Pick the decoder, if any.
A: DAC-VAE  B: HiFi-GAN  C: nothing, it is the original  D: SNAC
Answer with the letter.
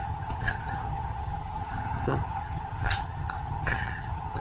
B